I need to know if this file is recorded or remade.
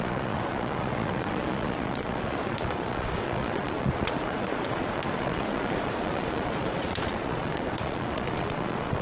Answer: remade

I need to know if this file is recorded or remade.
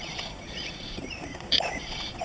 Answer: remade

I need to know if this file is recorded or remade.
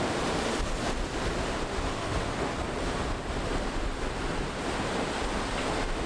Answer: recorded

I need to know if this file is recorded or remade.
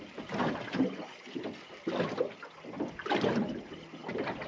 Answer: recorded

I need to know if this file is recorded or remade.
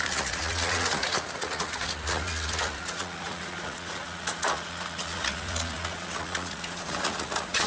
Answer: remade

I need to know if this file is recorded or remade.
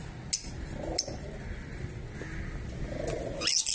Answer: recorded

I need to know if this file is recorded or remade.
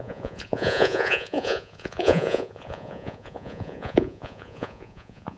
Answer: remade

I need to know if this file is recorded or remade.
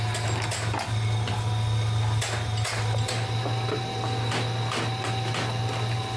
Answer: recorded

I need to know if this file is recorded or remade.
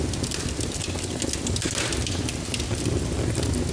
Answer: recorded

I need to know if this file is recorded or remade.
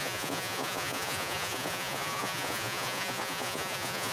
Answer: remade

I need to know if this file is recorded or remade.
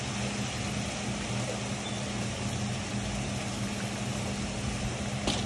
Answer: recorded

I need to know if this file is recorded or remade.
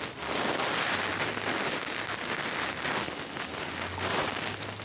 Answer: recorded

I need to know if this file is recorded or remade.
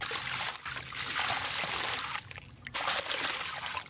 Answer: recorded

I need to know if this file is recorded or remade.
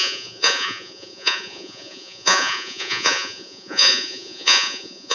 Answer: remade